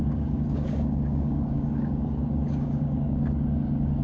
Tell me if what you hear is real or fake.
fake